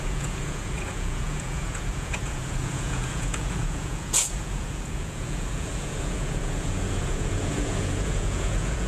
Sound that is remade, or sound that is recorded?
remade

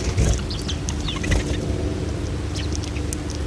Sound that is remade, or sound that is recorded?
recorded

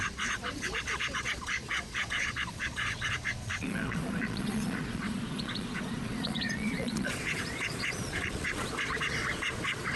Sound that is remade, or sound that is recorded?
remade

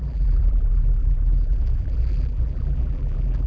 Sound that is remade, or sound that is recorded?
remade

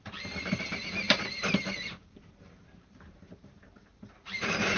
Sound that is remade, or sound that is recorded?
remade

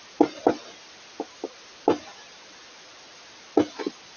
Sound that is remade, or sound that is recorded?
recorded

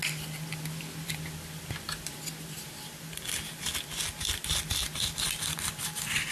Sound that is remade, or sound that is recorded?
recorded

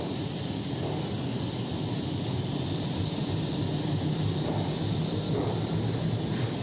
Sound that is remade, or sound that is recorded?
recorded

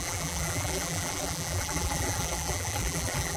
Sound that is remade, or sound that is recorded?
remade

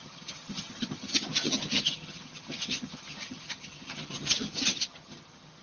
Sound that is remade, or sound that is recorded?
remade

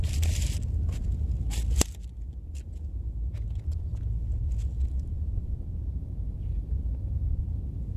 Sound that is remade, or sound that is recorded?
recorded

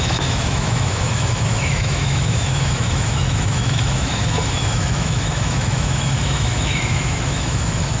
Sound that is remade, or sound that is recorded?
remade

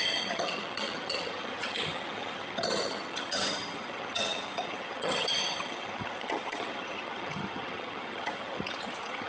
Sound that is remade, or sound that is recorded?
remade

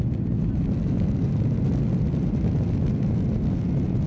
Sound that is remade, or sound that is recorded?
recorded